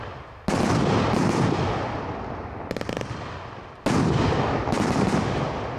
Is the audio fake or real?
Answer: real